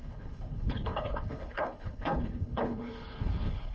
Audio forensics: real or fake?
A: fake